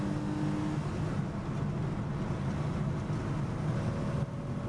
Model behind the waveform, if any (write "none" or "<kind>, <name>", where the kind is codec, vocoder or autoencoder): none